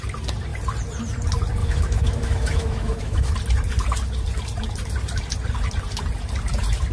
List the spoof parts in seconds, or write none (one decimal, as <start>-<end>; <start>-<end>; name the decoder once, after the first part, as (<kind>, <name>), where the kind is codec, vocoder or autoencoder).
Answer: 1.6-3.3 (autoencoder, DAC-VAE)